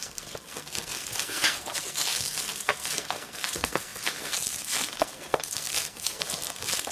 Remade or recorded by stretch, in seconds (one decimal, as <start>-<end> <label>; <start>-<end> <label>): 0.0-6.9 remade